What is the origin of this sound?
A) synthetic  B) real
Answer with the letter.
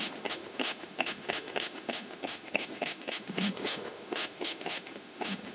A